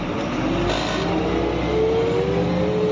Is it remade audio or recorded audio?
recorded